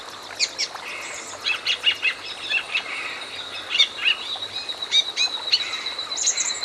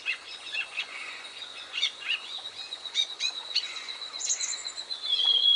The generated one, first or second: second